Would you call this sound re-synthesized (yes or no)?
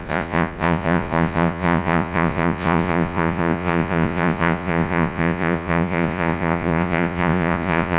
yes